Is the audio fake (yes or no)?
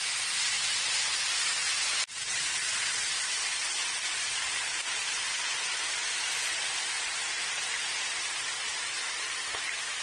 no